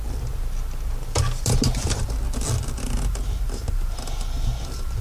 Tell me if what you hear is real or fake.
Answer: real